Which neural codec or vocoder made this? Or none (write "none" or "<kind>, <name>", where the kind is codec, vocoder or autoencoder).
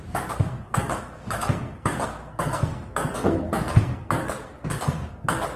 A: codec, SNAC